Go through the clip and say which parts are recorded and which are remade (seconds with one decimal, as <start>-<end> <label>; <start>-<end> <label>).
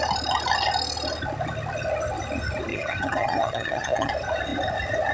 0.0-2.7 recorded; 2.7-4.1 remade; 4.1-5.1 recorded